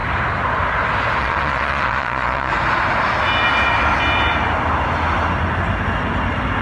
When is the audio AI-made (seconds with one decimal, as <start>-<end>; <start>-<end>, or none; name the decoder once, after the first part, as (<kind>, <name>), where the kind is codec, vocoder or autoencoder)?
1.2-2.5 (vocoder, Vocos)